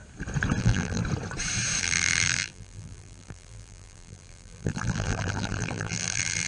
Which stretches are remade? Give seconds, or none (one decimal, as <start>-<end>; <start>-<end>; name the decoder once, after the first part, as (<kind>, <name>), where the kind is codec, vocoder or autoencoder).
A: 0.6-1.0 (vocoder, BigVGAN v2); 1.8-6.5